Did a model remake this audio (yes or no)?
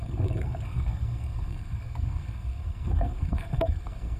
yes